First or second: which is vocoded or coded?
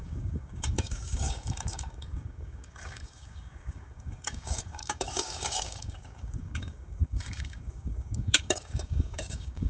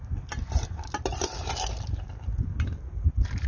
first